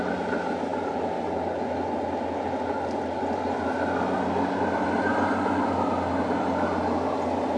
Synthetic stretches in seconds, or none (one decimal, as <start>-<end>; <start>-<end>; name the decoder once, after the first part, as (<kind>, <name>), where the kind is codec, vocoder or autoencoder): none